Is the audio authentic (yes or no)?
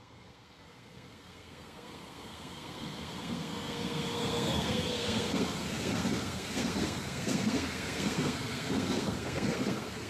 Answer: no